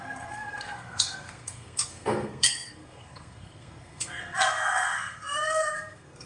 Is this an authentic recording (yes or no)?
no